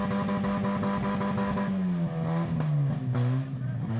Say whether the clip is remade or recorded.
recorded